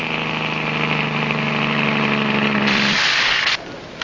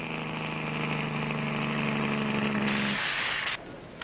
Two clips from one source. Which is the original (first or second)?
second